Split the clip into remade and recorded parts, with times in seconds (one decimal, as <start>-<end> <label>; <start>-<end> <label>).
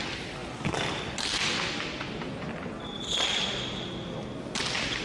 0.0-5.0 recorded